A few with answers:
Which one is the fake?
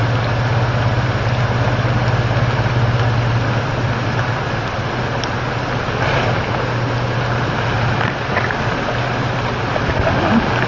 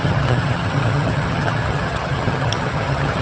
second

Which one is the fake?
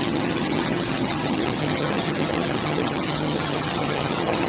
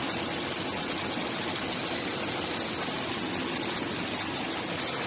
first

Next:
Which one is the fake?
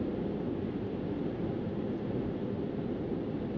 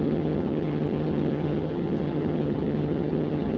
second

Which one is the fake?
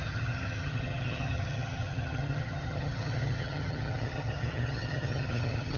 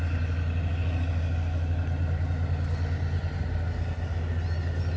first